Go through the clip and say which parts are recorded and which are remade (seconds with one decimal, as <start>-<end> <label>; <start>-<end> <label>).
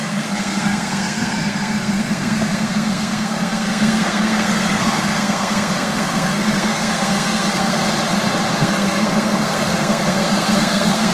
0.0-7.8 remade; 7.8-8.5 recorded; 8.5-11.1 remade